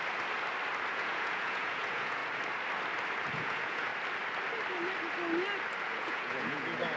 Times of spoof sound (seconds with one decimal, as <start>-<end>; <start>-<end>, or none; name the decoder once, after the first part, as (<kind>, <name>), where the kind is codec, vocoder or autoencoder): 0.9-2.2 (vocoder, Vocos); 3.3-3.9; 5.8-7.0